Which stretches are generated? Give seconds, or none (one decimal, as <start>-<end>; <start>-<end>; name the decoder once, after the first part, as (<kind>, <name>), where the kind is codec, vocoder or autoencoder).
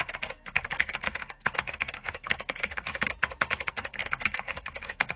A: 0.0-2.9 (codec, SNAC); 3.7-5.2